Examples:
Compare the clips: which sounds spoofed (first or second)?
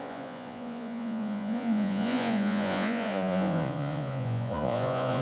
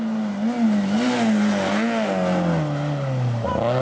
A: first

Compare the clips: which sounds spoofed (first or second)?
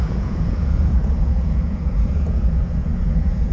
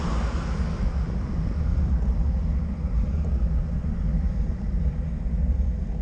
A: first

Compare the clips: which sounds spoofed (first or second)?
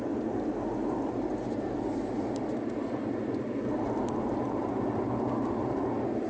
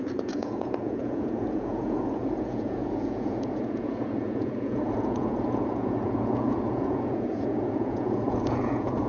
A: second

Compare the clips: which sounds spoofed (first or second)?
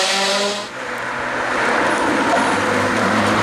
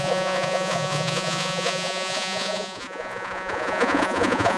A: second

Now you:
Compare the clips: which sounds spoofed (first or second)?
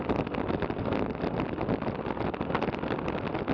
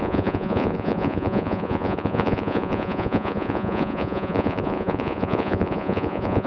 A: second